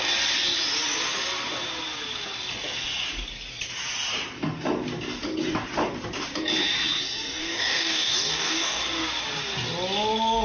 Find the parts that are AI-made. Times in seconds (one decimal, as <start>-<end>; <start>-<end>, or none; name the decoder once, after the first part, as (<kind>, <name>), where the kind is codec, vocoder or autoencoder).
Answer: 7.4-8.8 (codec, DAC)